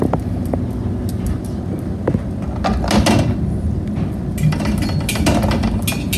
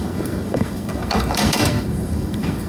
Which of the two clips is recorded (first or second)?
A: first